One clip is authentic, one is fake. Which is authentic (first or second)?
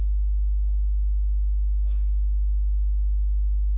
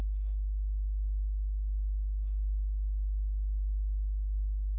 first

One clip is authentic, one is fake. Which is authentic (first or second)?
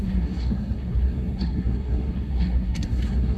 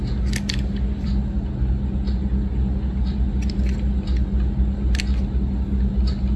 second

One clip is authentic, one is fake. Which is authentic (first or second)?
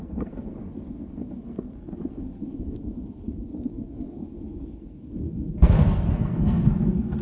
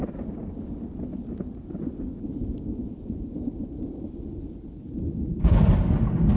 second